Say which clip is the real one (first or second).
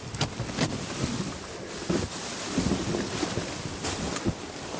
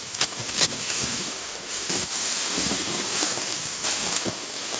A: first